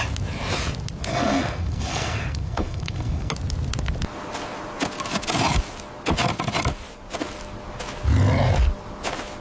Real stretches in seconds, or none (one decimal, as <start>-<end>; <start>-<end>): 0.0-1.1; 3.3-9.4